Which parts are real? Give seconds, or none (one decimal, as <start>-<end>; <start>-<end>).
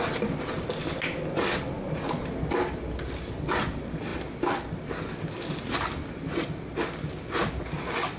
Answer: 0.0-8.2